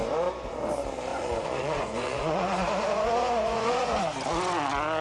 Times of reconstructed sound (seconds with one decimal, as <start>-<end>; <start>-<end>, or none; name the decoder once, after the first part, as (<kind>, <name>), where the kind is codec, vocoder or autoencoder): 1.1-4.0 (vocoder, Vocos)